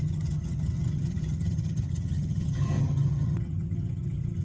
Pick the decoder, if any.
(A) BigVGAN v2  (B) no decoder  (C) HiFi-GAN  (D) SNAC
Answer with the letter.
C